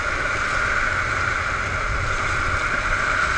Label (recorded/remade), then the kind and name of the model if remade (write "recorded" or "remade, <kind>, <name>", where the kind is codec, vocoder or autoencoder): recorded